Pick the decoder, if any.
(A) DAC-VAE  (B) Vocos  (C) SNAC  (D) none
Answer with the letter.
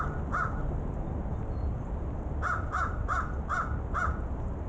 D